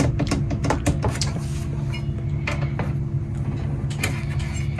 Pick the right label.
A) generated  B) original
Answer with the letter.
B